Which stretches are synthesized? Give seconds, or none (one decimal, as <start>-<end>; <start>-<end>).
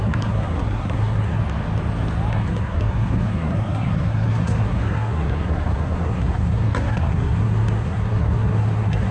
0.0-1.4; 2.3-9.1